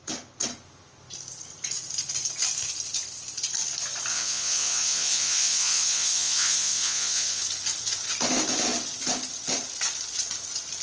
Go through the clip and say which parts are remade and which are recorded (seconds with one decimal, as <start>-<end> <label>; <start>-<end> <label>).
0.0-4.1 recorded; 4.1-7.4 remade; 7.4-10.8 recorded